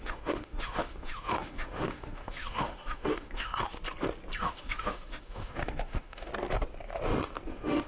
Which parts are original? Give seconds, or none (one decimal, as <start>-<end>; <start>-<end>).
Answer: 3.5-4.4; 6.3-7.5